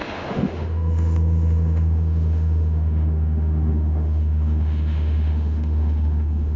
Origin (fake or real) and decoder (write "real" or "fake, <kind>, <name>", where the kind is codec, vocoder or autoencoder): fake, autoencoder, DAC-VAE